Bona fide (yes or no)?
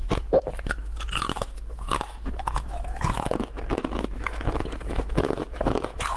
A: no